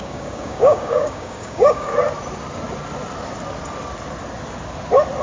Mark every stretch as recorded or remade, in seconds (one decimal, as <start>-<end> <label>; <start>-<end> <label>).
0.0-1.9 remade; 1.9-5.2 recorded